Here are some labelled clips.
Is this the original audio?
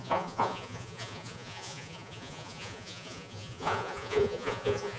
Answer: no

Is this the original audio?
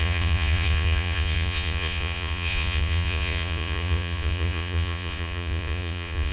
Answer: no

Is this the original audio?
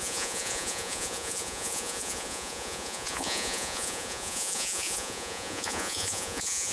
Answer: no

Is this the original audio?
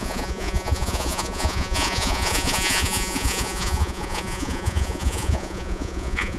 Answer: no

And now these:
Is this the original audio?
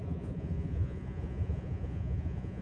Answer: no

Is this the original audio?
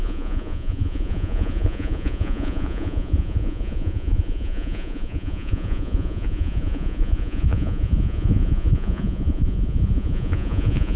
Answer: no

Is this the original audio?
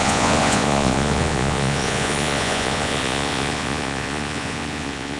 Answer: no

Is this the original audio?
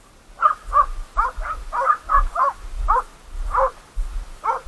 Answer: yes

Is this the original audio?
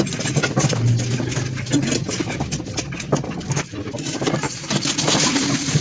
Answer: yes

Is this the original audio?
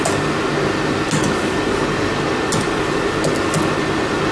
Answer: yes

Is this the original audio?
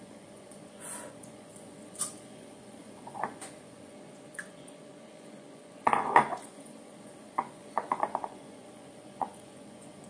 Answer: no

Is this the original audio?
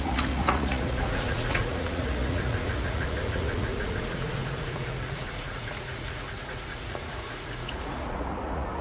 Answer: no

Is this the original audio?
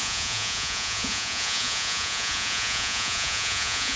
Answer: no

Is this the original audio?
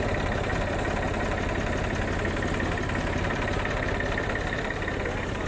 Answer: yes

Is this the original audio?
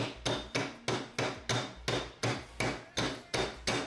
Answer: yes